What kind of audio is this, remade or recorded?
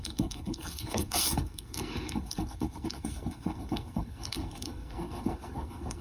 remade